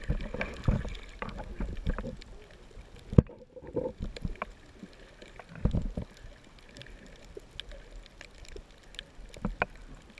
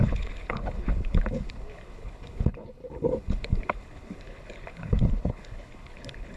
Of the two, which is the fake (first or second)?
second